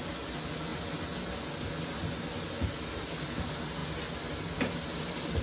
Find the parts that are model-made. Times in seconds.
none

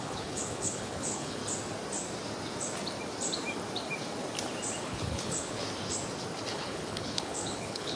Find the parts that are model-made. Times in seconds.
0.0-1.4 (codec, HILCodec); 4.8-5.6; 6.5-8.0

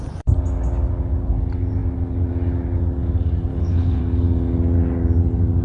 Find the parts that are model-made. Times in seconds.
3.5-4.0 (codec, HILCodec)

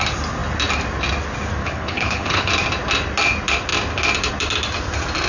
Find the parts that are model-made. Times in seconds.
1.6-2.5 (codec, HILCodec)